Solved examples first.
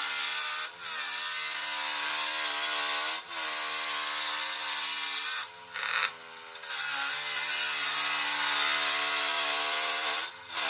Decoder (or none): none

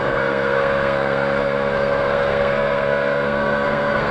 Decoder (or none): codec, SNAC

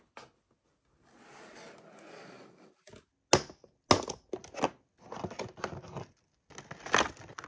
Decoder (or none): none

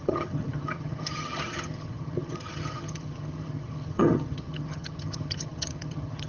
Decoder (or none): vocoder, HiFi-GAN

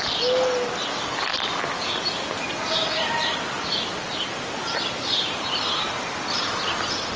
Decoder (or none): none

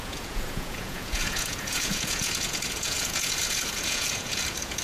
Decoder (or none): vocoder, Vocos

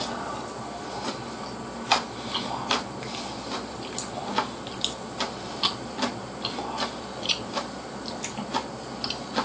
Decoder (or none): none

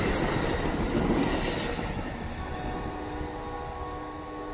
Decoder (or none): none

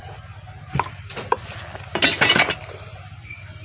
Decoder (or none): none